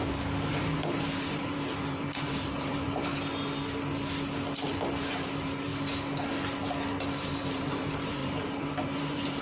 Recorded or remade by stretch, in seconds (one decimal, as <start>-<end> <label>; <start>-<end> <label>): 0.0-0.5 recorded; 0.5-3.1 remade; 3.1-5.1 recorded; 5.1-5.7 remade; 5.7-7.1 recorded; 7.1-9.4 remade